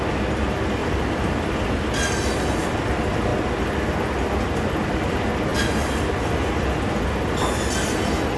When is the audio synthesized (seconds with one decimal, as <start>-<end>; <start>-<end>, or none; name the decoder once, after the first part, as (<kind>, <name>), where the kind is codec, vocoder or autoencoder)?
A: 0.8-1.7 (vocoder, BigVGAN v2)